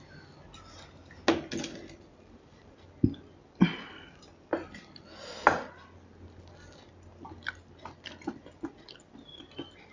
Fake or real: real